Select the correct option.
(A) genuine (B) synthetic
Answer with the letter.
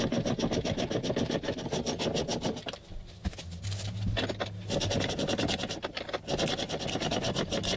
A